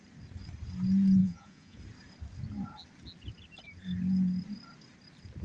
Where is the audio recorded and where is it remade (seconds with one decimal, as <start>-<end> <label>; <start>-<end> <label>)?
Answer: 0.0-1.2 recorded; 1.2-1.8 remade; 1.8-5.4 recorded